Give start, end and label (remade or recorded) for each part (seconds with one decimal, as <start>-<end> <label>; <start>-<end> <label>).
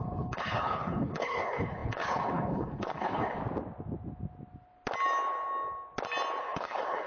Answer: 0.0-3.4 remade; 3.4-6.4 recorded; 6.4-7.1 remade